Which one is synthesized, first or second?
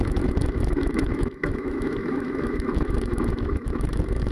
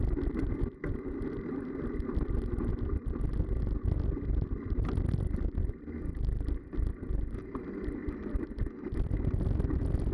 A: first